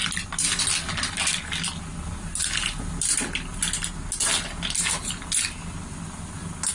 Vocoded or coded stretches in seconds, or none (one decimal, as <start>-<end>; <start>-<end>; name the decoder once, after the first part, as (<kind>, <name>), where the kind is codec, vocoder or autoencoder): none